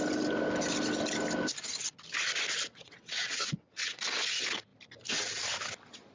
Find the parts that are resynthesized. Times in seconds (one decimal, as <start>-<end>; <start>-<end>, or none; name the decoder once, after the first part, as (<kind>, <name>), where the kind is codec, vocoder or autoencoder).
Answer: 2.7-4.0 (vocoder, WaveNeXt)